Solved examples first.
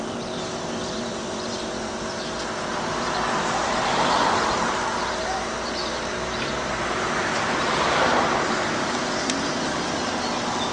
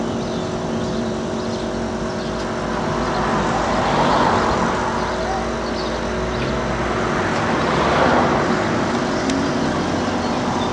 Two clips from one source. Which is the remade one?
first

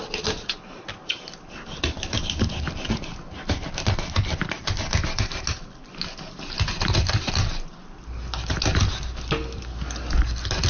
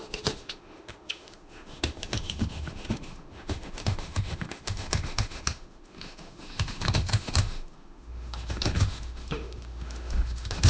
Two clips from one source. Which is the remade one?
second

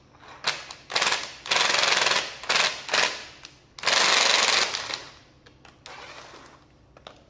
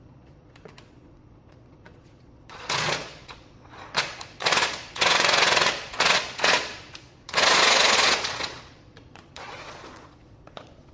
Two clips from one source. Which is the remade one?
second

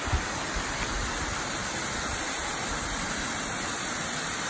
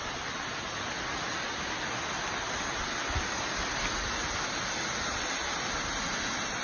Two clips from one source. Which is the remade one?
first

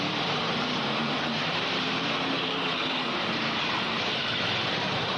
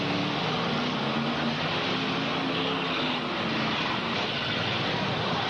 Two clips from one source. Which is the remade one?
first